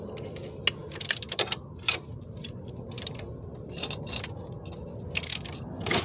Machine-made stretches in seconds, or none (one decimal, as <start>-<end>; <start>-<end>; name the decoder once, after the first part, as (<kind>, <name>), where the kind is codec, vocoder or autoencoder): 0.8-3.2 (vocoder, BigVGAN v2)